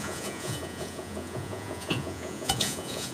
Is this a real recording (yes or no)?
no